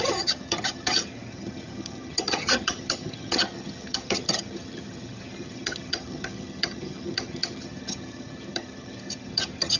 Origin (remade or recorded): remade